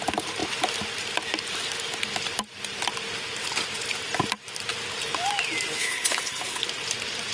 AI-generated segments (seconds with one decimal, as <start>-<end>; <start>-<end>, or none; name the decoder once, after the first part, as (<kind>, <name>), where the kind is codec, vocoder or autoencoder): 5.8-6.6 (codec, HILCodec)

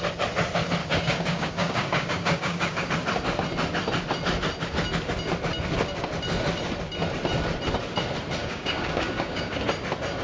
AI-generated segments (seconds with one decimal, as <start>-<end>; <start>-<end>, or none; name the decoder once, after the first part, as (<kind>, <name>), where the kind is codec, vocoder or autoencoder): 0.8-2.9 (codec, DAC); 8.4-9.6